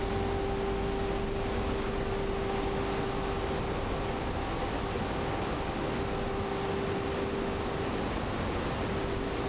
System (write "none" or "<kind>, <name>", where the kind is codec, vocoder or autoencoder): none